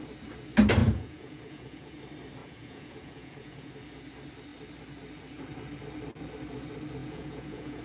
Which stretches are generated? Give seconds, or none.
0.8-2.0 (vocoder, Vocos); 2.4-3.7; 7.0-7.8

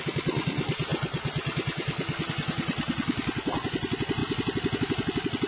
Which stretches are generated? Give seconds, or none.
0.9-2.3 (vocoder, BigVGAN v2); 4.2-5.5

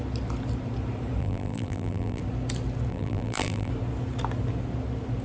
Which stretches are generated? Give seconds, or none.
1.2-2.2 (vocoder, BigVGAN v2); 2.9-3.7

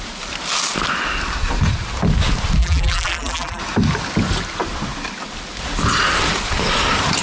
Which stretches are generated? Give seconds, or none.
2.6-3.6 (vocoder, BigVGAN v2)

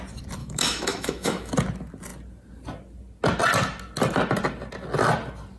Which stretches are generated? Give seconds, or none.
0.4-1.5 (autoencoder, DAC-VAE)

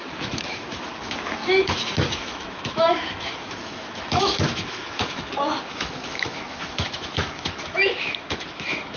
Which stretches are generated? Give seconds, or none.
0.0-9.0 (autoencoder, DAC-VAE)

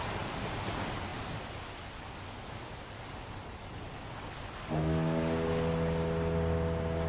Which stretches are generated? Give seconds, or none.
none